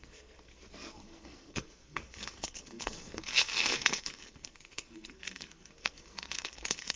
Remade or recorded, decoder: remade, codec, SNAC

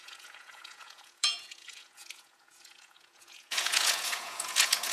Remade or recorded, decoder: remade, vocoder, Vocos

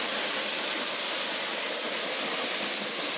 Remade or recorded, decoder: recorded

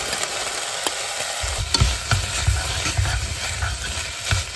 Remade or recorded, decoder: recorded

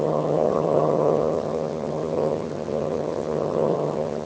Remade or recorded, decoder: remade, vocoder, HiFi-GAN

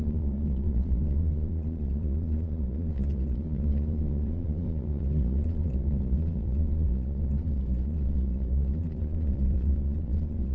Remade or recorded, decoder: remade, vocoder, Vocos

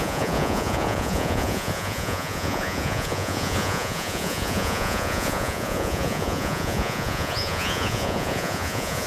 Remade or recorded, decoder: remade, vocoder, Vocos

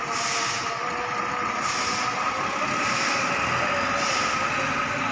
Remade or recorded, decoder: recorded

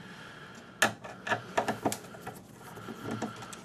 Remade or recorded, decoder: recorded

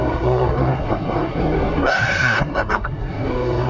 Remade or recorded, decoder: remade, codec, SNAC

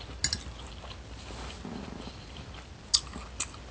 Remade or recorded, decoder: recorded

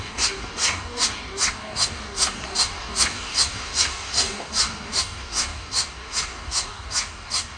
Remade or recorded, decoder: remade, codec, DAC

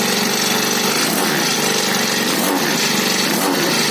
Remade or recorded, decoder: recorded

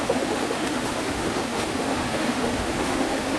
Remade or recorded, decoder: remade, autoencoder, DAC-VAE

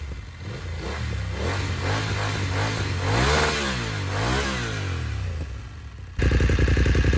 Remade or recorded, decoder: recorded